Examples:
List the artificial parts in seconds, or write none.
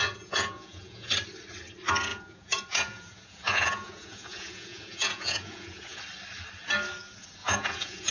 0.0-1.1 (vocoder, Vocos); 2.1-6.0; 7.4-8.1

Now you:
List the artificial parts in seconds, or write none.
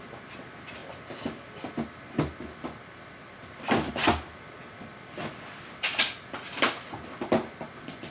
none